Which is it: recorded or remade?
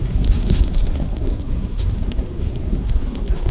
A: remade